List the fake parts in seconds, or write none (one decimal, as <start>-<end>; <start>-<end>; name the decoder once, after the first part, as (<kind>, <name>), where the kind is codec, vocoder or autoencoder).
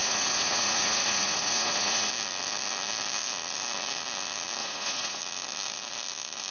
0.0-2.1 (vocoder, Vocos); 4.6-5.2